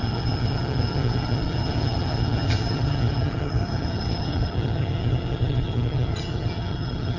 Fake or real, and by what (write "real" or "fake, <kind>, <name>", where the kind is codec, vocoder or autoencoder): fake, vocoder, HiFi-GAN